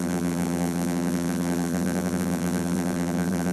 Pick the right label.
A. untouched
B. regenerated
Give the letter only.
B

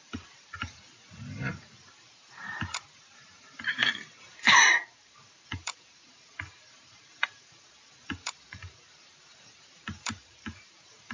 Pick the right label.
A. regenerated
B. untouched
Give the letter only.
A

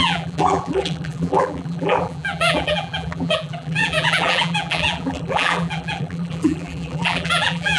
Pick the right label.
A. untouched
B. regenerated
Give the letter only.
B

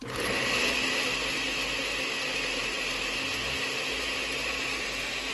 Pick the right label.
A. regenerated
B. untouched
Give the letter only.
B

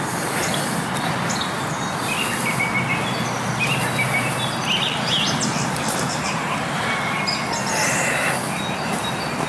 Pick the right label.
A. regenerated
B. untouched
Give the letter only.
B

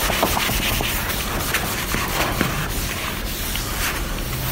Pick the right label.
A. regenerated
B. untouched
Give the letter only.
A